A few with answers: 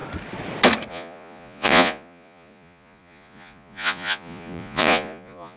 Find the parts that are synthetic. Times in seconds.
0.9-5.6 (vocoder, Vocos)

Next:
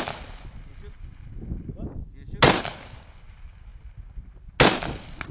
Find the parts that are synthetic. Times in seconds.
none

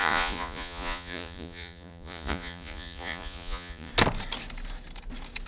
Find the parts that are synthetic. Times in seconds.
0.0-3.9 (vocoder, Vocos)